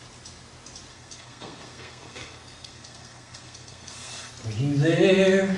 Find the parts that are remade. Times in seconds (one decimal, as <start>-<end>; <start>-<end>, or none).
0.9-4.3